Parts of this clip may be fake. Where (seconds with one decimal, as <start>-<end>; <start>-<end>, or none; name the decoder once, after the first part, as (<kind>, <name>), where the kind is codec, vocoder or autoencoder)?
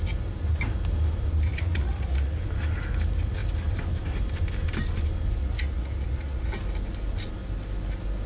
1.5-2.4 (vocoder, Vocos); 5.4-6.5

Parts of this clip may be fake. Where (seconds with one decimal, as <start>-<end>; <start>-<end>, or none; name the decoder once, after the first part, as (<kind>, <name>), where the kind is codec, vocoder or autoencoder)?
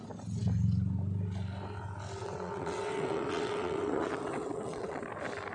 2.2-5.0 (vocoder, WaveNeXt)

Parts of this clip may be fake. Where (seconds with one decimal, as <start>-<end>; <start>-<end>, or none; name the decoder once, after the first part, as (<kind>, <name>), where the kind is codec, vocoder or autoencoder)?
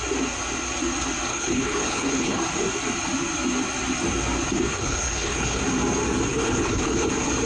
1.3-2.4 (codec, HILCodec); 4.7-5.6; 6.3-7.1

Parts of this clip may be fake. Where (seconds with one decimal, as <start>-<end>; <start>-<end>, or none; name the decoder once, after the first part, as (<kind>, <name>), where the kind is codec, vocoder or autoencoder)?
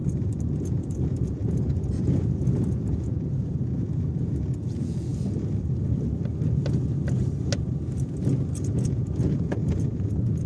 0.6-5.1 (vocoder, Vocos); 8.6-10.5